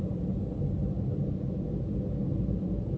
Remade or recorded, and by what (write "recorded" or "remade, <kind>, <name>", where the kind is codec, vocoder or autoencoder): recorded